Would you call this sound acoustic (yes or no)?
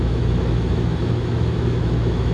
no